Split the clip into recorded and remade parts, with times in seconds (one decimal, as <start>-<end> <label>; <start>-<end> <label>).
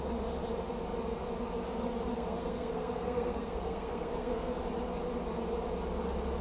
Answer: 0.0-2.1 recorded; 2.1-4.6 remade; 4.6-6.4 recorded